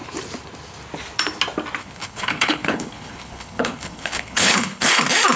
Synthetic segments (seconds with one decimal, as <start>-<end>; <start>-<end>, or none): 1.8-5.0

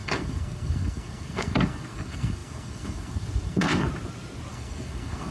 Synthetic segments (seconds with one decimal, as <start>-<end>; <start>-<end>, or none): 0.0-3.9; 4.5-5.3

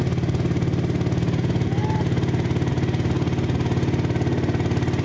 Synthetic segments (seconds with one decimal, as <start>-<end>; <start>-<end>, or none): none

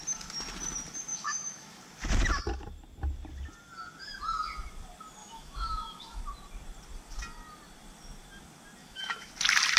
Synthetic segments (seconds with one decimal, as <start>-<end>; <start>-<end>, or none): 1.1-1.8; 5.2-6.2; 8.8-9.3

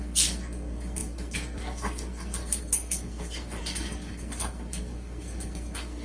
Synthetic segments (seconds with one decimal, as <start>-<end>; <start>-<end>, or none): 0.0-6.0